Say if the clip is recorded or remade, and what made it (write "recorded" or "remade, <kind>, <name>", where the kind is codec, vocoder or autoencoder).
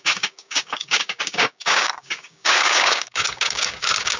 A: remade, codec, DAC